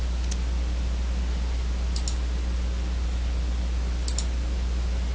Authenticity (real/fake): real